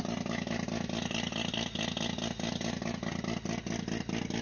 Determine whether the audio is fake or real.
real